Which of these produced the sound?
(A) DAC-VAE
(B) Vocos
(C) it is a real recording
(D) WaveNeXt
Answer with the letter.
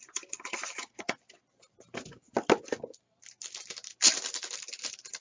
C